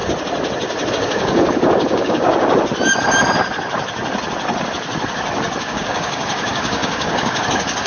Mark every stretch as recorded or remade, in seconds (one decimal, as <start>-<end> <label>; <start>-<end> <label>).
0.0-0.9 recorded; 0.9-2.3 remade; 2.3-5.6 recorded; 5.6-7.9 remade